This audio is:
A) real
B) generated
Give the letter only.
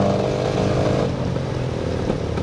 A